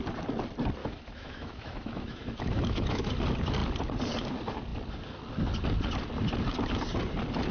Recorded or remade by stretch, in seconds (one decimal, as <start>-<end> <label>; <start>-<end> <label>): 0.0-0.8 recorded; 0.8-3.1 remade; 3.1-7.5 recorded